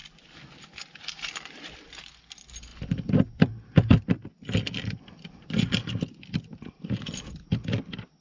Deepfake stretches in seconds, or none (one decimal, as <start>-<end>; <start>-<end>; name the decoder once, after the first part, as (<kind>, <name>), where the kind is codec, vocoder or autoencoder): none